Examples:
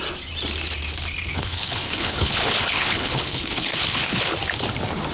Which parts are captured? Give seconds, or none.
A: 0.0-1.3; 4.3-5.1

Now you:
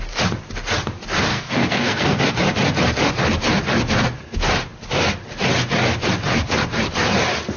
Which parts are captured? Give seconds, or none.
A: 0.0-1.3; 2.2-7.6